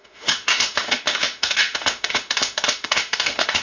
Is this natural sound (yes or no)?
no